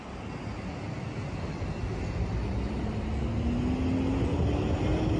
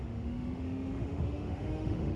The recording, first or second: first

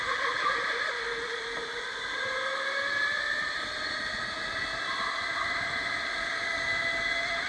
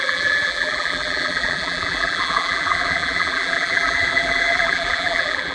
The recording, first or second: first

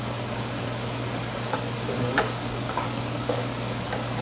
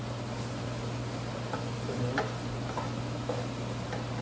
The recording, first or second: second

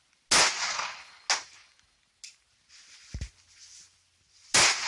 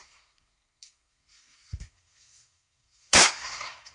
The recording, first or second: first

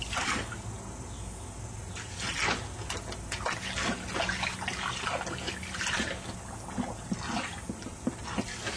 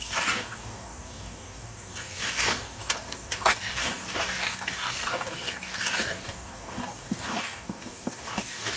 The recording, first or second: first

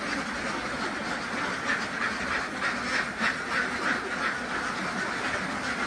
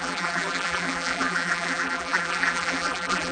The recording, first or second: first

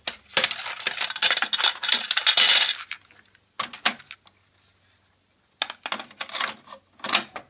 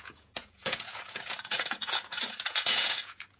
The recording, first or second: first